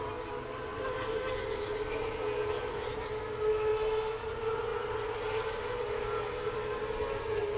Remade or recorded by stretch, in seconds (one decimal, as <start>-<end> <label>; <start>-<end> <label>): 0.0-7.6 recorded